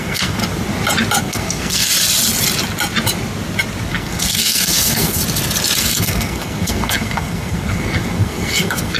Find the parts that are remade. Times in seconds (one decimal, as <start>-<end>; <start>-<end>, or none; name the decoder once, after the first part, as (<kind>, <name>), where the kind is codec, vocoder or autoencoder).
0.0-0.4 (codec, SNAC); 1.2-1.9; 3.9-5.2; 5.8-9.0